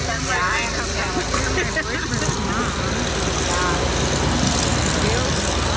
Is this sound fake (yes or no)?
no